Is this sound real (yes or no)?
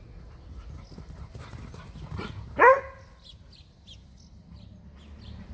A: yes